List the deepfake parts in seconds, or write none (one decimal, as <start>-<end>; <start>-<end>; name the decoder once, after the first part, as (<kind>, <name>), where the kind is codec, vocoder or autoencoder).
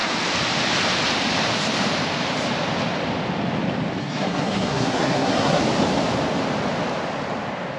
4.0-5.6 (codec, SNAC)